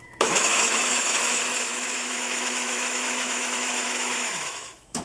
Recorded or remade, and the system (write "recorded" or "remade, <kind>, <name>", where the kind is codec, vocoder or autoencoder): remade, autoencoder, DAC-VAE